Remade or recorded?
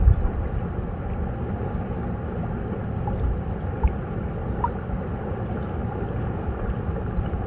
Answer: recorded